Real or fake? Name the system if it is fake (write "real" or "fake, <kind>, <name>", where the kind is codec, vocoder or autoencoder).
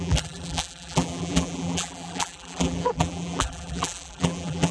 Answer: fake, vocoder, BigVGAN v2